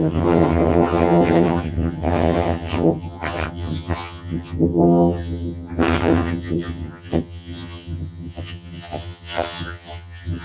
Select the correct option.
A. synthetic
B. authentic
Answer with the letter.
A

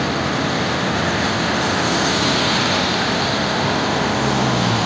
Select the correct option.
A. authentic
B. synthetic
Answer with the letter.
A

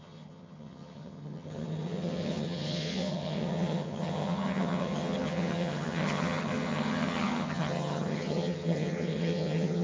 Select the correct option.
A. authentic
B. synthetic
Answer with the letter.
B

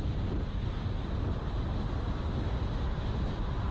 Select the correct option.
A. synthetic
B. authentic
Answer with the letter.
B